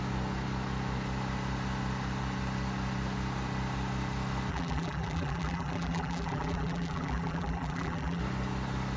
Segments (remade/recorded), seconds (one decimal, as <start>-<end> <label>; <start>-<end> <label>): 0.0-4.5 recorded; 4.5-8.2 remade; 8.2-9.0 recorded

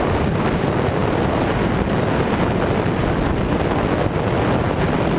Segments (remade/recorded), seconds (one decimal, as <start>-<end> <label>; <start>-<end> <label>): 0.0-5.2 recorded

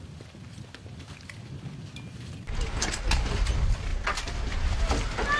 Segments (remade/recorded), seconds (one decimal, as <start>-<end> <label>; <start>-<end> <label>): 0.0-5.4 recorded

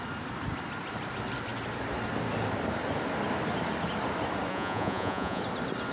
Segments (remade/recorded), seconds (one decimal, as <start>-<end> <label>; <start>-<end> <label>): 0.0-4.5 recorded; 4.5-5.4 remade; 5.4-5.9 recorded

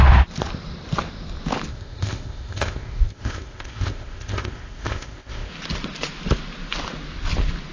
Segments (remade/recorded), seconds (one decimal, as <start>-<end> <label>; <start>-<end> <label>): 0.0-1.7 recorded; 1.7-5.5 remade; 5.5-7.7 recorded

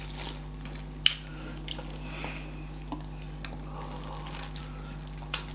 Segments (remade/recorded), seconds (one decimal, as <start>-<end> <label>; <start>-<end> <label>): 0.0-5.5 recorded

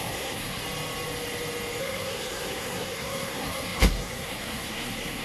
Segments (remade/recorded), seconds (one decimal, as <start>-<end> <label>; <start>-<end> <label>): 0.0-0.6 remade; 0.6-1.8 recorded; 1.8-5.2 remade